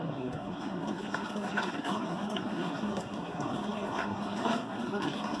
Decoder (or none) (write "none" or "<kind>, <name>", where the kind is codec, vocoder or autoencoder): codec, SNAC